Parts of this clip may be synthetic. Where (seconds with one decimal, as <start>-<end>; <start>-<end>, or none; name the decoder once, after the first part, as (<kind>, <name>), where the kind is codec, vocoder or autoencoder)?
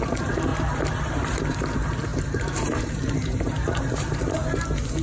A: 0.0-4.4 (vocoder, BigVGAN v2)